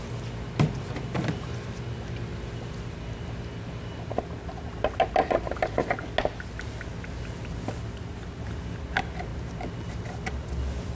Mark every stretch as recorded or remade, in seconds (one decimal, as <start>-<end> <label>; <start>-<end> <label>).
0.0-10.9 recorded

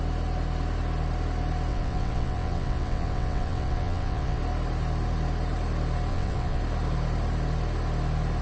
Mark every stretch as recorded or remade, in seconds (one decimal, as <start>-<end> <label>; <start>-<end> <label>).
0.0-1.7 recorded; 1.7-4.4 remade; 4.4-6.1 recorded; 6.1-6.6 remade; 6.6-8.4 recorded

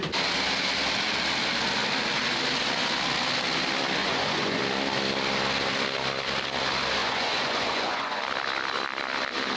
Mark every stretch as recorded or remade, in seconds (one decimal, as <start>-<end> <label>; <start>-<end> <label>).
0.0-4.0 recorded; 4.0-4.6 remade; 4.6-7.0 recorded; 7.0-8.2 remade; 8.2-9.6 recorded

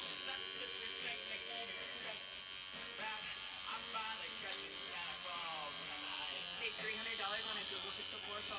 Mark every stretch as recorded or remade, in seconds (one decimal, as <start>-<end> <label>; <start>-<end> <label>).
0.0-6.8 recorded; 6.8-8.6 remade

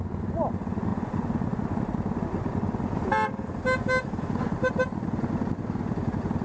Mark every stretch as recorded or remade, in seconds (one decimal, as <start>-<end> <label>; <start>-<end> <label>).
0.0-6.4 recorded

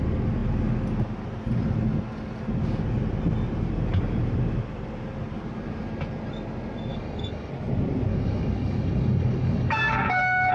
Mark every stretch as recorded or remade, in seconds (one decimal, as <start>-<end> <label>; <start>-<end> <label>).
0.0-6.9 recorded; 6.9-7.5 remade; 7.5-8.1 recorded; 8.1-10.5 remade

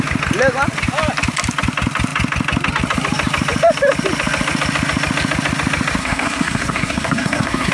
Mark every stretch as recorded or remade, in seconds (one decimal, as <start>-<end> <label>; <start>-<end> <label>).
0.0-6.0 recorded; 6.0-7.7 remade

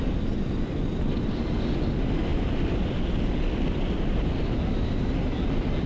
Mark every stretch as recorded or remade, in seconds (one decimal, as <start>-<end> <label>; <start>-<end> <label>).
0.0-5.9 recorded